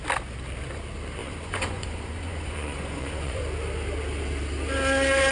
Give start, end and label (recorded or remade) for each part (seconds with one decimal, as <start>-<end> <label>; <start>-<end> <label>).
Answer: 0.0-1.2 recorded; 1.2-3.4 remade; 3.4-5.3 recorded